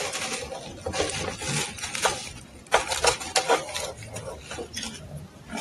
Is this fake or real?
real